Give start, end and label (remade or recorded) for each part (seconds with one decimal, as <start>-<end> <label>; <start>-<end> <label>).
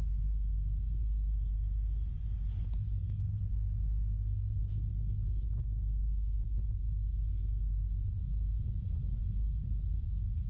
0.0-3.5 recorded; 3.5-4.9 remade; 4.9-10.5 recorded